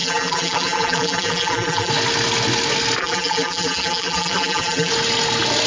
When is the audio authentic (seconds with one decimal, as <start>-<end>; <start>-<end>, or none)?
1.9-3.0; 4.9-5.7